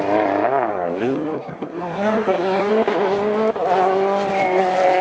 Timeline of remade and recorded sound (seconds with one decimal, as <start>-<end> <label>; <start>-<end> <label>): 0.0-0.7 recorded; 0.7-2.7 remade; 2.7-5.0 recorded